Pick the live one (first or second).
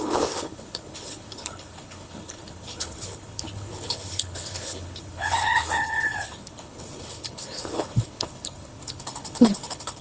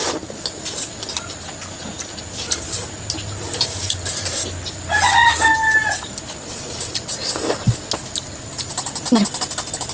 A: second